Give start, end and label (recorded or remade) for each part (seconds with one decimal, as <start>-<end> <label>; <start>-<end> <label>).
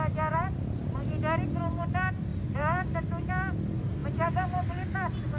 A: 0.0-5.4 recorded